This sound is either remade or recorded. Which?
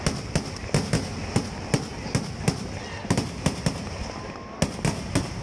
recorded